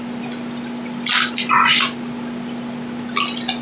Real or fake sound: real